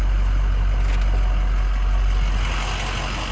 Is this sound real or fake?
real